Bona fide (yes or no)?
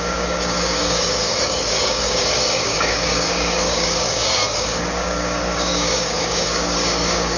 no